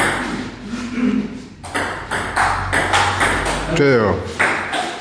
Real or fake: real